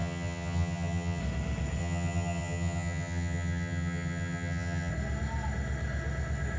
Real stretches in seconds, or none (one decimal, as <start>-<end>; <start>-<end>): 1.2-1.8; 4.9-6.6